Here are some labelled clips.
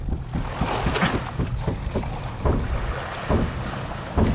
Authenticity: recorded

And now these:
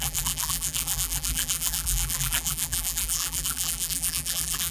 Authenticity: remade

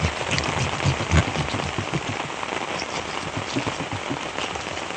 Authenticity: remade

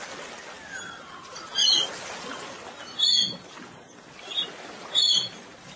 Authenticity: recorded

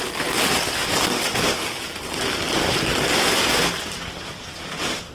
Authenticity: recorded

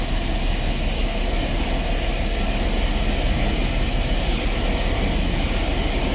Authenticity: recorded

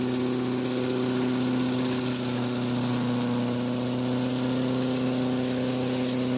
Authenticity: recorded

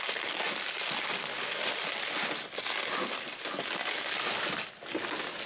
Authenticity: recorded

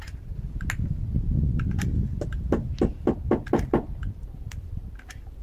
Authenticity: recorded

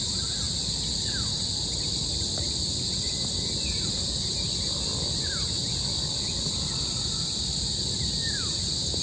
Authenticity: recorded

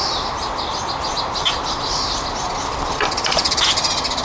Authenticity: recorded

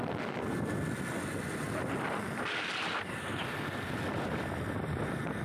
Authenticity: recorded